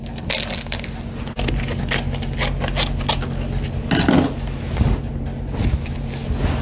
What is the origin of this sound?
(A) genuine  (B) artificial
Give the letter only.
A